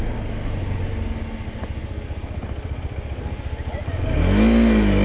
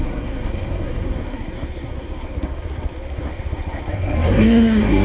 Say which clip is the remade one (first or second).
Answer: second